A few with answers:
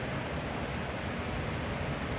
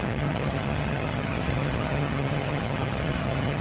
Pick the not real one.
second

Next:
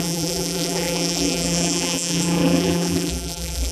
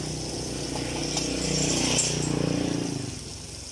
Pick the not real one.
first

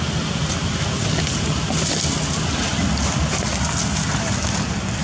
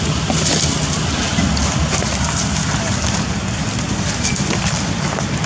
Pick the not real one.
second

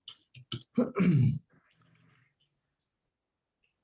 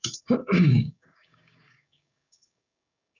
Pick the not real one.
second